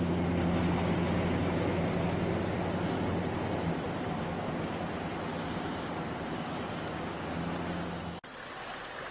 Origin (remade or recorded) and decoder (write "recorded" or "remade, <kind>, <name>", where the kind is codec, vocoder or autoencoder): recorded